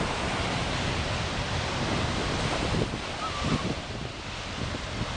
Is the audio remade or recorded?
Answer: recorded